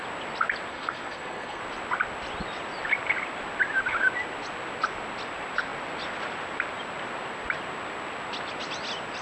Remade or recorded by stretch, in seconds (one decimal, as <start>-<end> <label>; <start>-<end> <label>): 0.0-0.7 recorded; 0.7-1.6 remade; 1.6-9.2 recorded